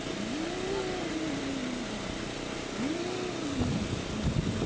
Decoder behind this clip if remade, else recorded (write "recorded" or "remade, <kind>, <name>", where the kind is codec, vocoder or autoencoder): recorded